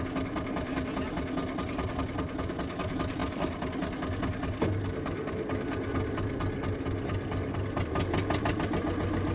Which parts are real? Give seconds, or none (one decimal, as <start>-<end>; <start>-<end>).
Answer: 0.0-9.3